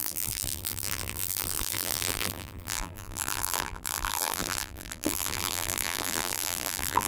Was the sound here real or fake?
fake